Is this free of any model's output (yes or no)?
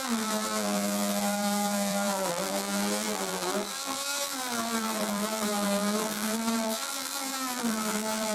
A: no